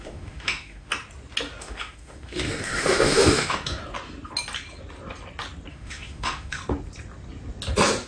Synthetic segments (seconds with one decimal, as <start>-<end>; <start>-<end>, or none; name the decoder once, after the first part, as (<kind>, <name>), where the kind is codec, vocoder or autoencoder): 0.0-0.9 (autoencoder, DAC-VAE); 1.6-3.8; 5.7-6.6